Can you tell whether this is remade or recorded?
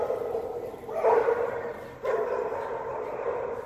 recorded